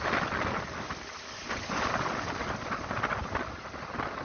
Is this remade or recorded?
recorded